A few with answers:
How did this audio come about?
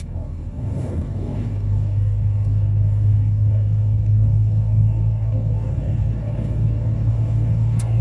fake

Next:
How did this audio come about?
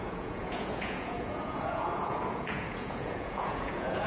fake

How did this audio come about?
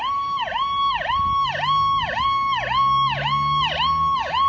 real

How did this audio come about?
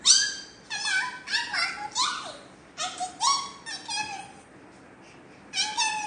real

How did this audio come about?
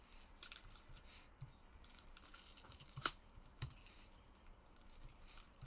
fake